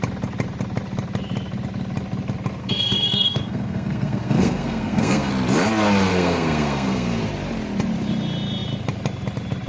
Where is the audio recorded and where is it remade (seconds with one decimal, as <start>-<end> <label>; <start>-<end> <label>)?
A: 0.0-2.6 recorded; 2.6-5.3 remade; 5.3-6.1 recorded; 6.1-7.2 remade; 7.2-9.7 recorded